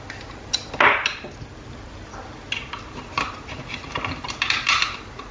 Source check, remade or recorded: recorded